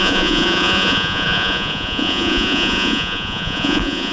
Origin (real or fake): fake